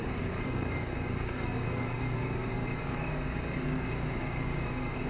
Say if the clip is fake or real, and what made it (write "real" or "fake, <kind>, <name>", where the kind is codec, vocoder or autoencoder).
fake, codec, DAC